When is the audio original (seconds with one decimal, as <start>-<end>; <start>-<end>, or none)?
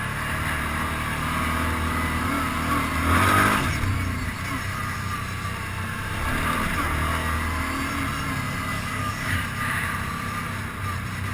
0.0-8.7; 9.4-11.3